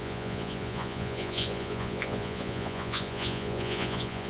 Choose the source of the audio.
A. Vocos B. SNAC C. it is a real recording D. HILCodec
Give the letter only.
A